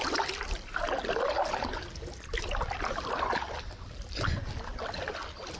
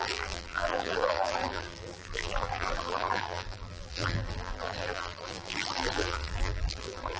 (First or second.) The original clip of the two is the first